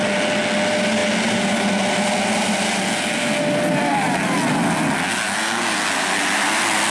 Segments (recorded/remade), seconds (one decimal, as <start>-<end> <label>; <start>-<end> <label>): 0.0-6.9 recorded